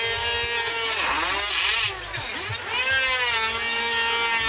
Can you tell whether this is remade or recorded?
recorded